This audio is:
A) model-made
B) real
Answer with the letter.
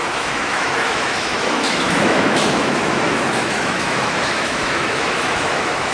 A